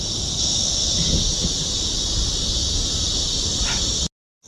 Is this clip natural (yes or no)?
yes